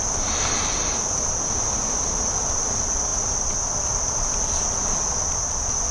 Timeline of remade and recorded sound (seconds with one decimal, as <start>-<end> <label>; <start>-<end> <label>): 0.0-5.9 recorded